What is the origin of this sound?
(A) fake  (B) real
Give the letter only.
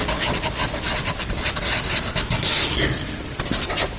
B